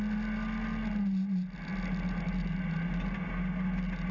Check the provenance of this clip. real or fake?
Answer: real